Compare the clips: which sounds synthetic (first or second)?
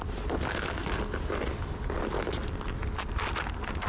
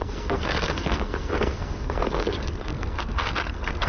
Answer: second